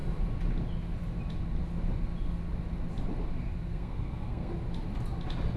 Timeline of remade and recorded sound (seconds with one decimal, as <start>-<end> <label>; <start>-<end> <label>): 0.0-3.7 recorded; 3.7-4.5 remade; 4.5-5.6 recorded